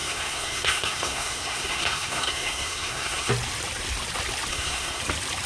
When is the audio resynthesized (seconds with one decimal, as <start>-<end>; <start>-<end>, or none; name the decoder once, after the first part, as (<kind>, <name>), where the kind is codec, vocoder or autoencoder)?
0.0-3.3 (codec, SNAC); 4.5-5.0